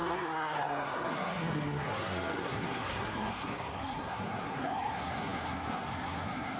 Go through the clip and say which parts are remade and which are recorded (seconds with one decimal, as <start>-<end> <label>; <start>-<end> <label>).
0.0-6.6 remade